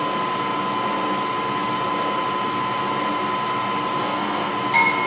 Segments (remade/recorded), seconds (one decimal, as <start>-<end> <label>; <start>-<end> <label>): 0.0-4.0 recorded; 4.0-4.5 remade; 4.5-5.1 recorded